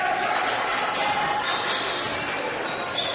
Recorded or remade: recorded